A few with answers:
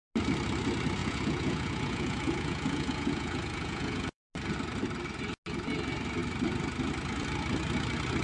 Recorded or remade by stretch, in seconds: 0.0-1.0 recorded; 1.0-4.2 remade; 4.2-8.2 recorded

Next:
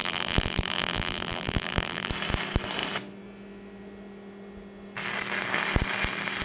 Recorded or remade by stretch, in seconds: 0.0-2.1 remade; 2.1-6.4 recorded